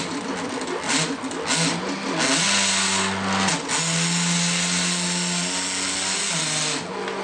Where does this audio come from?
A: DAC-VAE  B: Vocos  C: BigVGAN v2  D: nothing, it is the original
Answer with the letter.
D